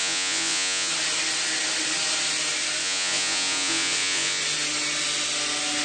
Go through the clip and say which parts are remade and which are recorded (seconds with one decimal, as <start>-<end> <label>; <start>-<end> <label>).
0.0-0.9 remade; 0.9-2.8 recorded; 2.8-4.4 remade; 4.4-5.8 recorded